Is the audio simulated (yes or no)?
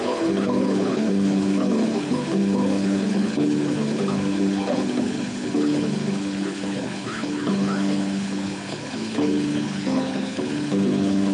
yes